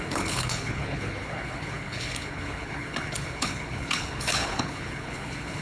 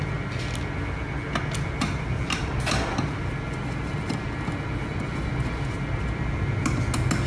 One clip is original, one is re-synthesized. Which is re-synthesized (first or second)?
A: first